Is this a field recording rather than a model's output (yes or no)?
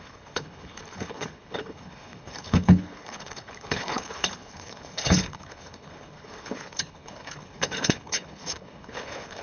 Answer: no